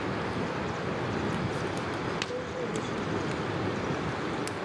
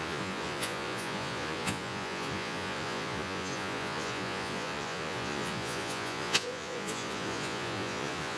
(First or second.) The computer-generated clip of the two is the second